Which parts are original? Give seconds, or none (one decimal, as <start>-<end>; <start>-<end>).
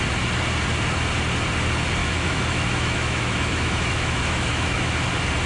0.0-2.0; 4.9-5.5